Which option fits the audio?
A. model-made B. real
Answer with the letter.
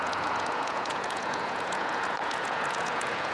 A